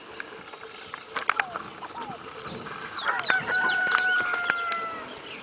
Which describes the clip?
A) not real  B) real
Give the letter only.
B